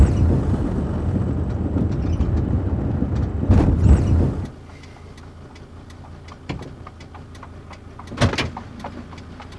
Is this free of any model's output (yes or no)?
yes